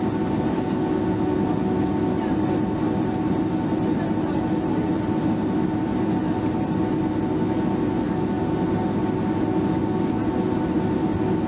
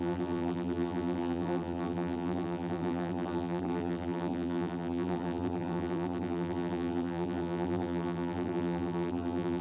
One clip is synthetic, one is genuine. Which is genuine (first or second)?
first